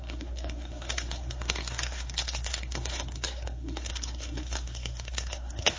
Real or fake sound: fake